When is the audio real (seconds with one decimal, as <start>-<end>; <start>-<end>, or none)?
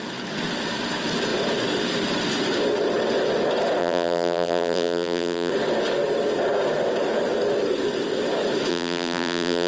0.0-3.8; 5.5-8.7